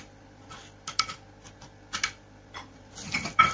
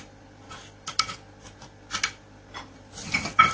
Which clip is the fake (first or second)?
first